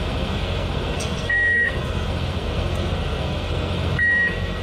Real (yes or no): no